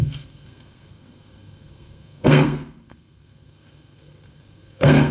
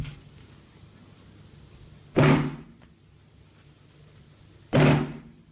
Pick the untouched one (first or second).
second